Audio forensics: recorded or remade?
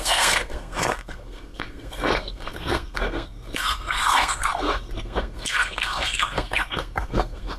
remade